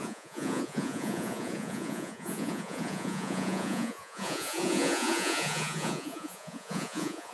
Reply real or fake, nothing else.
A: fake